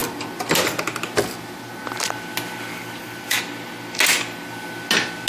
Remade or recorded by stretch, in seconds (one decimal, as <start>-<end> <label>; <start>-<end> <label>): 0.0-2.7 recorded; 2.7-3.4 remade; 3.4-5.3 recorded